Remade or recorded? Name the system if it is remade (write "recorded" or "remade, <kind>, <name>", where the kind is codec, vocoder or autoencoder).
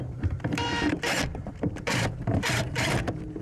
remade, vocoder, BigVGAN v2